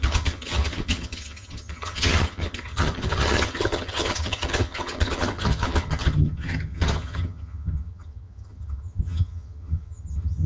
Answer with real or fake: fake